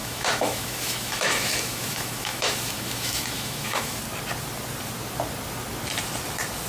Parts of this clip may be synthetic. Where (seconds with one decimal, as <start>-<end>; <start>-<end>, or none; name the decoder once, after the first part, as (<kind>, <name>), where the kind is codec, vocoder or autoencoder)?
0.0-4.0 (autoencoder, DAC-VAE)